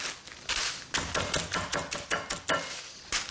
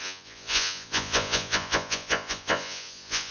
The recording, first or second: first